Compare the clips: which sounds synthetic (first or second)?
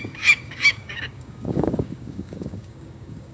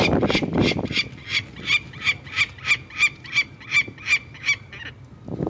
first